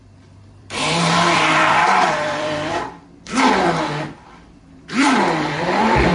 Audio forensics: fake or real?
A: fake